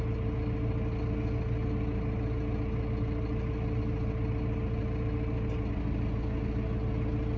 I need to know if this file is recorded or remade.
recorded